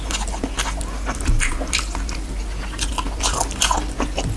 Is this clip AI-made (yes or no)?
no